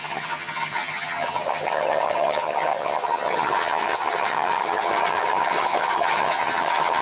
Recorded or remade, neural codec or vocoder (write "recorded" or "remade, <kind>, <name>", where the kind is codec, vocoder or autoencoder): remade, vocoder, HiFi-GAN